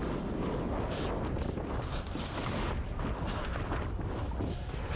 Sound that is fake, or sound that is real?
real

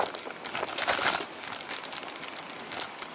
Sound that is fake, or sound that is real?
real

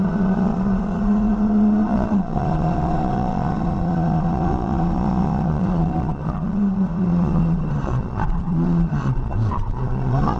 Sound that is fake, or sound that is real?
fake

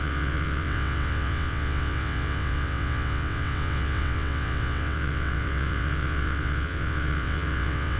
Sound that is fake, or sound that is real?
fake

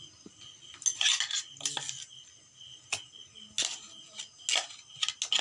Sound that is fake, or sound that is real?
real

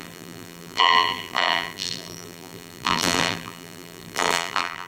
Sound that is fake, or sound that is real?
fake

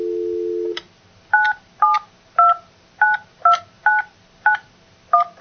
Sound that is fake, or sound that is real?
real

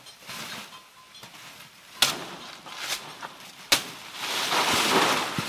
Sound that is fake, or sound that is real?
real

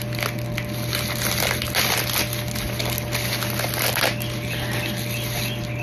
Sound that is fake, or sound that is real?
real